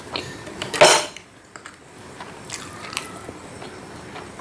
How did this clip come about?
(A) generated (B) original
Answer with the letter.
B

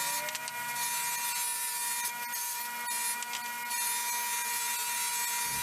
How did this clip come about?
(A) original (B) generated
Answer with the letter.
A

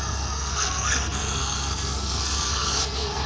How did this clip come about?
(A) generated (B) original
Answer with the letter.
A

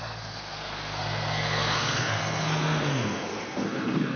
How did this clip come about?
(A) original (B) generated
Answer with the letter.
B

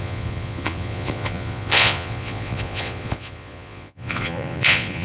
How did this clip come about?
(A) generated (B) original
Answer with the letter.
A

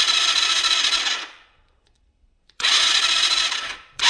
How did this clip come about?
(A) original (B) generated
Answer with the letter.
B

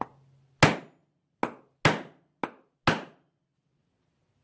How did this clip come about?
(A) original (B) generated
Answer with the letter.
A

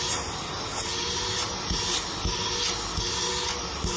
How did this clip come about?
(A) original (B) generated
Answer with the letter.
A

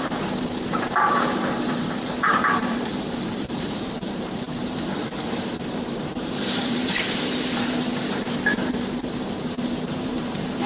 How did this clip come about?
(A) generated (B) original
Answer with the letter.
A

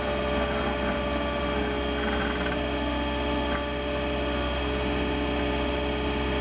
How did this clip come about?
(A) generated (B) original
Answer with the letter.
B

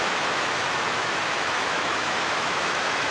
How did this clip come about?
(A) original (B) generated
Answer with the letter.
B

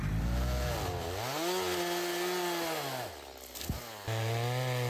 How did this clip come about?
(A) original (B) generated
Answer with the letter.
A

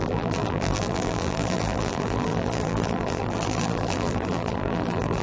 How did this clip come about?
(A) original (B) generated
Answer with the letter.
B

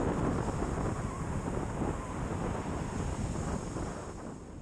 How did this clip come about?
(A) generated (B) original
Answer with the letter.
B